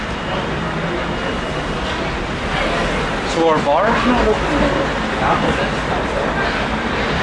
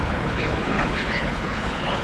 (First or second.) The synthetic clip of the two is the second